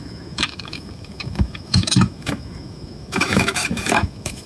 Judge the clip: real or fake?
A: fake